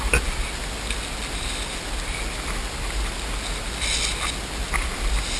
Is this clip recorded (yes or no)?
yes